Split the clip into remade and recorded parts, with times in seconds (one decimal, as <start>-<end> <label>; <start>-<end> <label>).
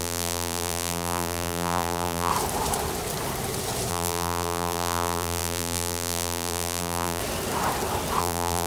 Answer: 0.0-2.3 remade; 2.3-3.9 recorded; 3.9-7.2 remade; 7.2-8.2 recorded; 8.2-8.7 remade